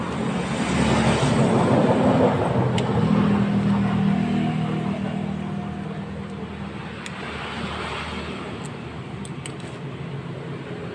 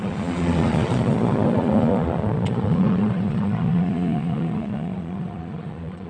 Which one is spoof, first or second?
second